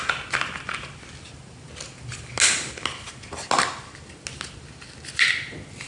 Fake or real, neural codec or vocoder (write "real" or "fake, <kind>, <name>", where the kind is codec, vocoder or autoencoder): real